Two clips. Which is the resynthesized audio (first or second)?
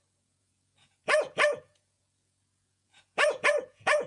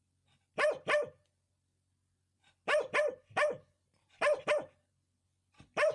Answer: first